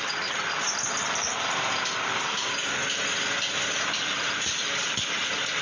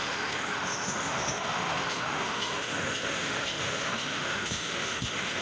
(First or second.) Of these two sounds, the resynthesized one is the second